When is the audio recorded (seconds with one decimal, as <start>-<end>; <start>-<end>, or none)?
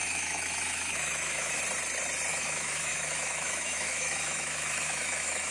1.6-2.3